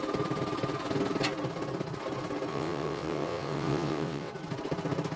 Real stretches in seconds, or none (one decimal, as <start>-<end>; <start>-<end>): 0.0-2.5; 4.3-5.2